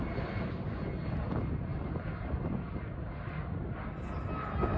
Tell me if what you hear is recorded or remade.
recorded